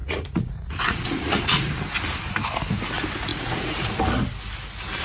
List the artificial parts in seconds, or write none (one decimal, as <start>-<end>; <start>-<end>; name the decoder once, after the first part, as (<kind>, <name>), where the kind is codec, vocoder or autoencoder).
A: 0.0-1.7 (vocoder, Vocos); 3.3-3.9